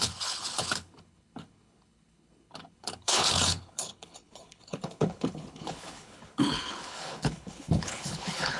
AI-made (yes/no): yes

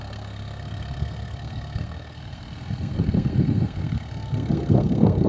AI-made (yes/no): yes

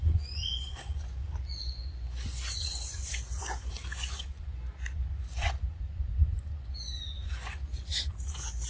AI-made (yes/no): yes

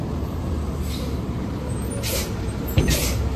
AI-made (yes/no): yes